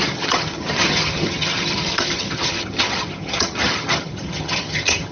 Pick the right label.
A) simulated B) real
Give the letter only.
A